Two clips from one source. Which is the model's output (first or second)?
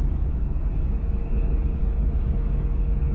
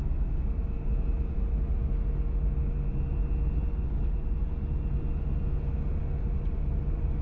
first